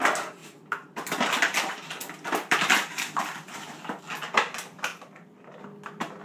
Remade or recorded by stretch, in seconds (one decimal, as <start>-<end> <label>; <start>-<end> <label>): 0.0-0.4 recorded; 0.4-4.0 remade; 4.0-4.9 recorded; 4.9-5.6 remade; 5.6-6.2 recorded